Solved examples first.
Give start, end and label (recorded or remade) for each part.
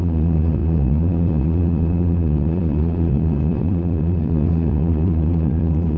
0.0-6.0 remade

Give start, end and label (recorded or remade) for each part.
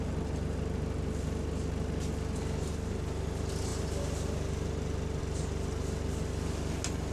0.0-7.1 recorded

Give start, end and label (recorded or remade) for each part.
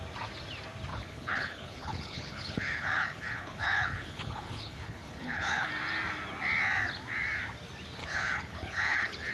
0.0-0.9 recorded; 0.9-5.7 remade; 5.7-8.0 recorded; 8.0-9.3 remade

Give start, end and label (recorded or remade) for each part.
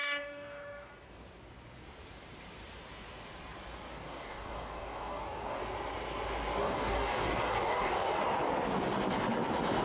0.0-0.9 remade; 0.9-3.9 recorded; 3.9-5.6 remade; 5.6-6.6 recorded; 6.6-8.2 remade; 8.2-9.8 recorded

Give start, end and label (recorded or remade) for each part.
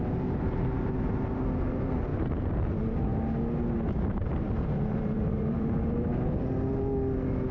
0.0-3.1 remade; 3.1-4.1 recorded; 4.1-6.1 remade; 6.1-7.5 recorded